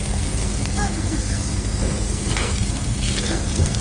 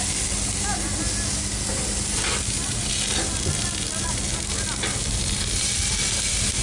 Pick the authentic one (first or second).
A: second